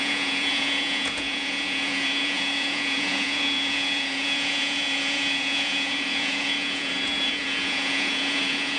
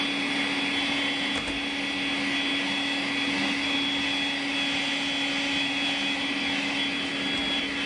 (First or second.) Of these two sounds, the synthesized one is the first